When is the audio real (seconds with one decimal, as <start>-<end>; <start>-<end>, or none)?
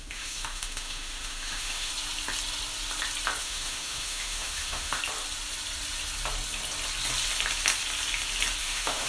1.9-3.4; 5.0-8.6